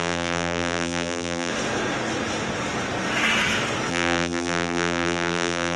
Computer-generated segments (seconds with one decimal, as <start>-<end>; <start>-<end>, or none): 0.0-1.5; 3.9-5.8